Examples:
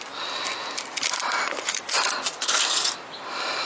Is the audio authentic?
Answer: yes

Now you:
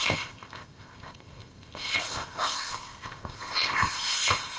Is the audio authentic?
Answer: no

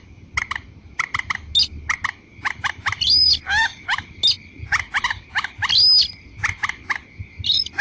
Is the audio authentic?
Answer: yes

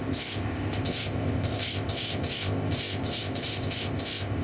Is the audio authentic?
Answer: no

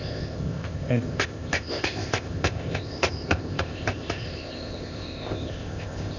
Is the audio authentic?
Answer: no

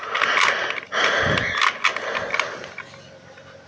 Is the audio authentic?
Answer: yes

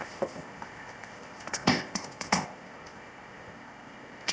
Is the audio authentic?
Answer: no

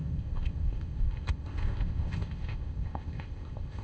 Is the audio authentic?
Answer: no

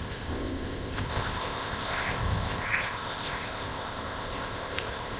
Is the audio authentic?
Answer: no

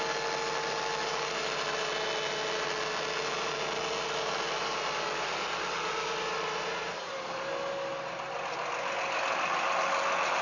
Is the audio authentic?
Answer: yes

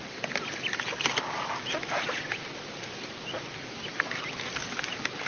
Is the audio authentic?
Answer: yes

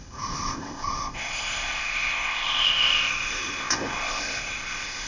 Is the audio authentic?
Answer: no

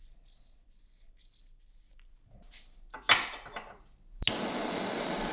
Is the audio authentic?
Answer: yes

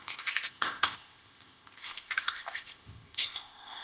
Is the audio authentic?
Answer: no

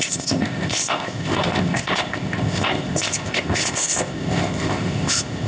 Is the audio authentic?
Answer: no